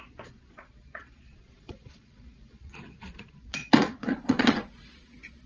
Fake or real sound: fake